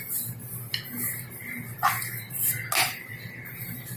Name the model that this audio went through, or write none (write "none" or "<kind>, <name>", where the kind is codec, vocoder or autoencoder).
none